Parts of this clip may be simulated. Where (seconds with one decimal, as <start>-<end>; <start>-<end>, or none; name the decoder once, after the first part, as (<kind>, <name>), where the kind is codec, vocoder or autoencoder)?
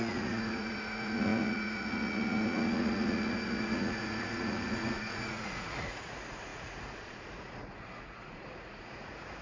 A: 0.0-9.4 (vocoder, Vocos)